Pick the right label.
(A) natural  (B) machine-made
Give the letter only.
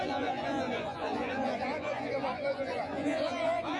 B